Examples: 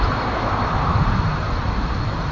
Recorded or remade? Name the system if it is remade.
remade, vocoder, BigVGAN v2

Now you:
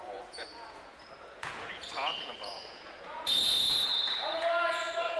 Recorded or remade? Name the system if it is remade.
remade, vocoder, Vocos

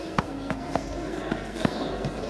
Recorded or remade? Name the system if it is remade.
remade, codec, SNAC